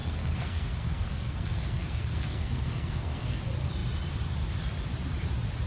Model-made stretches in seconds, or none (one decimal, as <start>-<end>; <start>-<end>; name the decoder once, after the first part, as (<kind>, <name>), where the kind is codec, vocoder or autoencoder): 0.0-3.4 (codec, SNAC)